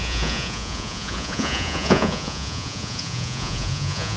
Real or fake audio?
fake